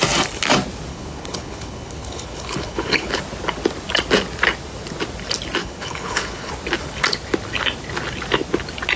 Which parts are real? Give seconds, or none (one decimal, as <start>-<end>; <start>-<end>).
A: 0.0-0.9; 3.2-5.6; 6.5-9.0